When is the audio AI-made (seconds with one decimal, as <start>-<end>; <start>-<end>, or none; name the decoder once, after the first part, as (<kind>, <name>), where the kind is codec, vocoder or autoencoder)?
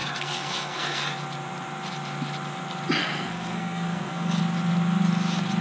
0.0-1.1 (codec, SNAC); 3.0-4.4